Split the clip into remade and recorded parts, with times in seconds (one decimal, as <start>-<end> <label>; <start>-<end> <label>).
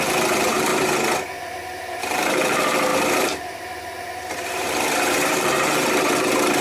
0.0-0.7 remade; 0.7-1.8 recorded; 1.8-6.6 remade